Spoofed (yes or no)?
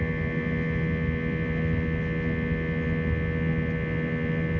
no